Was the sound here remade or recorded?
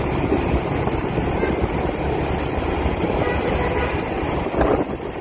recorded